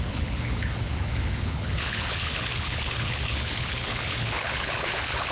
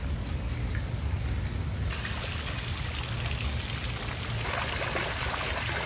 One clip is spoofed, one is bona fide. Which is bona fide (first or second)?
second